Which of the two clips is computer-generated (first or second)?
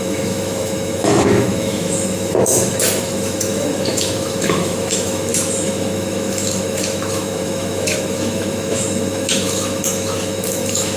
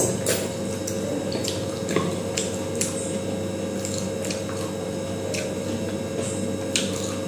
first